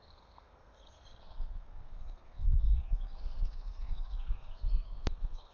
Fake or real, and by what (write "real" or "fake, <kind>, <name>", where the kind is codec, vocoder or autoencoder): fake, codec, SNAC